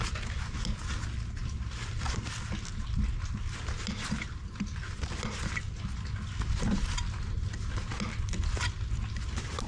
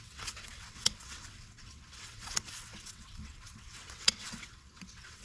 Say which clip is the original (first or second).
first